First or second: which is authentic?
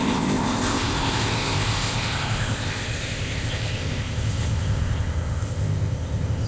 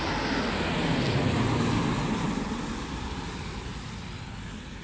second